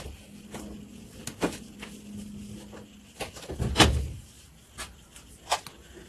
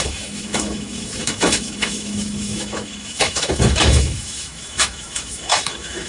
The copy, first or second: second